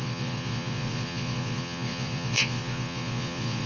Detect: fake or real fake